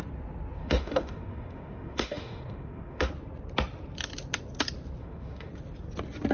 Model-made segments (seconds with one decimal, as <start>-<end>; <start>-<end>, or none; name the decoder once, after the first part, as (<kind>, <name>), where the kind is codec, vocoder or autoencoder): 0.6-3.1 (autoencoder, DAC-VAE); 5.0-5.5